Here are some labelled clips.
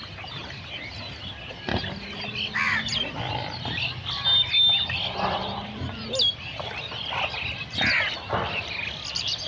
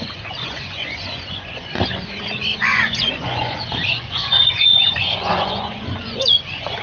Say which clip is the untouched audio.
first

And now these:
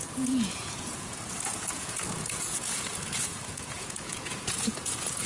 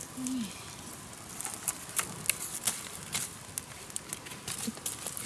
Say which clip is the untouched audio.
second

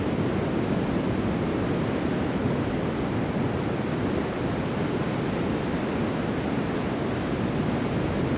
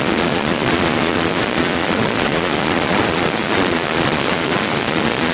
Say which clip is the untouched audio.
first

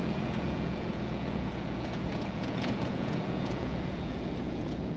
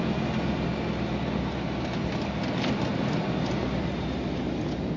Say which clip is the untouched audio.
second